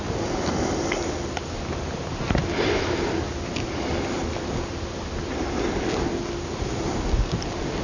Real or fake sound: real